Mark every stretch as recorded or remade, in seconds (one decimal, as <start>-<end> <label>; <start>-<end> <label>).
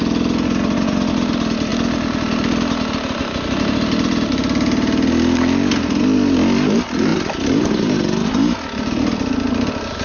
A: 0.0-10.0 recorded